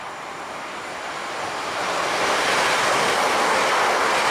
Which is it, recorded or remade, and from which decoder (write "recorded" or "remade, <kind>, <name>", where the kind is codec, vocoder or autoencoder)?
recorded